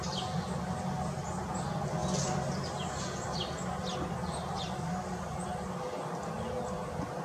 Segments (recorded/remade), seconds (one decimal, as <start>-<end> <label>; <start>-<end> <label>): 0.0-7.2 recorded